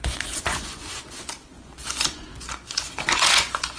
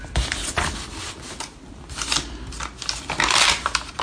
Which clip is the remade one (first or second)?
first